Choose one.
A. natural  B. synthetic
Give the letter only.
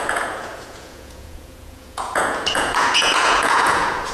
B